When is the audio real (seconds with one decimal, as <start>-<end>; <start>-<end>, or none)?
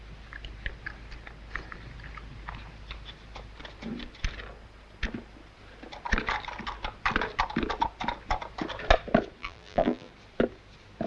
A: 0.0-9.4; 10.1-11.1